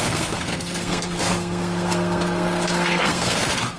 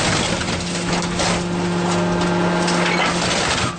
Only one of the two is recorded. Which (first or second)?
second